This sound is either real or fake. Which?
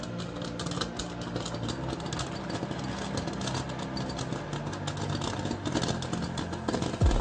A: real